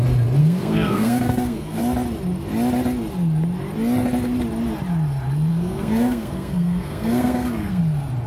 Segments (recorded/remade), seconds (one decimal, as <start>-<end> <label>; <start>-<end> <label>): 0.0-0.4 recorded; 0.4-1.8 remade; 1.8-5.5 recorded; 5.5-7.8 remade; 7.8-8.3 recorded